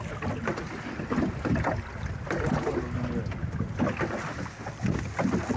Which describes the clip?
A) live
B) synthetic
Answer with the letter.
A